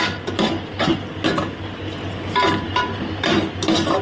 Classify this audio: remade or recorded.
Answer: recorded